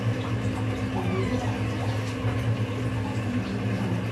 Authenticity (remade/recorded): recorded